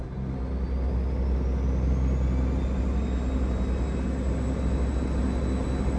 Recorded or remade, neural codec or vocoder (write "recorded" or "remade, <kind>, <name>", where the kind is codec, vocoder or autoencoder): recorded